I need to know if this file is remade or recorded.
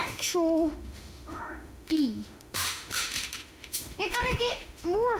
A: remade